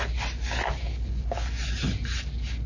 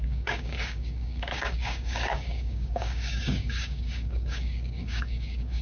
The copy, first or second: second